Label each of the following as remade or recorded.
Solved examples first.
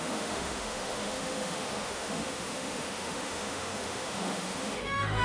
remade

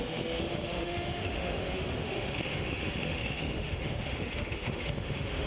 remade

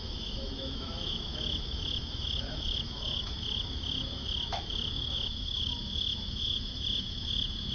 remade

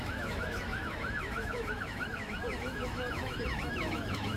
remade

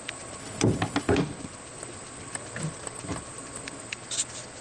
recorded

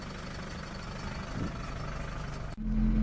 recorded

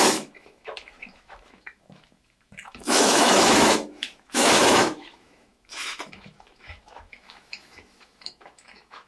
remade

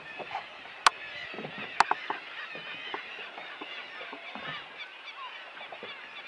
recorded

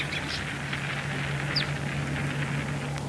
recorded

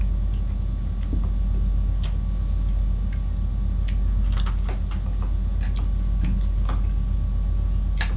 recorded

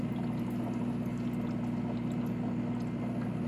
recorded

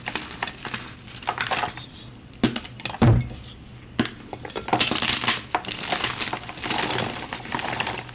recorded